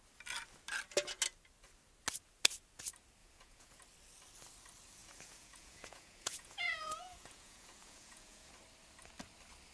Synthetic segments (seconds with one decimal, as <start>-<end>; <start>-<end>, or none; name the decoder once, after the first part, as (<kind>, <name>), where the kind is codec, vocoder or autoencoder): 3.2-3.8 (vocoder, Vocos); 5.0-8.5